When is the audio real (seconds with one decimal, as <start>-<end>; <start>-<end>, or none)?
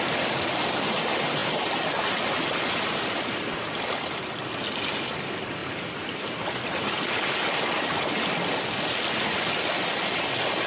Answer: 0.0-10.7